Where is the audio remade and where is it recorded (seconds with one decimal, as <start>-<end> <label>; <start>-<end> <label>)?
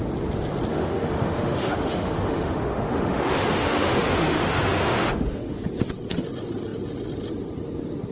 0.0-0.7 recorded; 0.7-5.6 remade; 5.6-8.1 recorded